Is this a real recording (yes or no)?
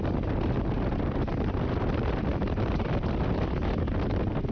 yes